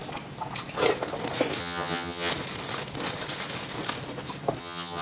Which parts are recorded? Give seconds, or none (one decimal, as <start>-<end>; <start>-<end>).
0.0-1.6; 2.3-4.6